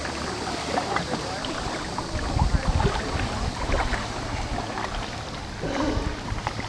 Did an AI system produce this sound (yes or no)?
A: no